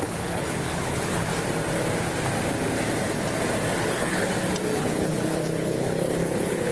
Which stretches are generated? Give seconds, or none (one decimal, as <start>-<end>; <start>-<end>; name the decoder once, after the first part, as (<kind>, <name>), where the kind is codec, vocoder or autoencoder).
0.0-1.3 (codec, HILCodec); 3.8-4.3; 4.8-6.7